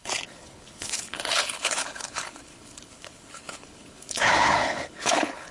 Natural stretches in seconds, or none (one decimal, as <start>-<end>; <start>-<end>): none